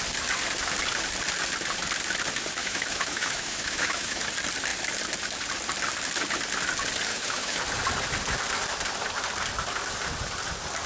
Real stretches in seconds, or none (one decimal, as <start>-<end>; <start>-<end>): 0.0-2.6; 4.2-7.1; 7.6-10.9